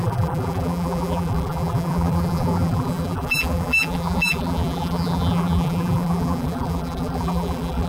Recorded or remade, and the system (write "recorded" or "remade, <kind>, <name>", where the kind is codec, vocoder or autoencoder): remade, vocoder, BigVGAN v2